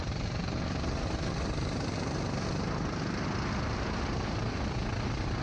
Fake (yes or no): no